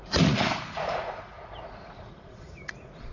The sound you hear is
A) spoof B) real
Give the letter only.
A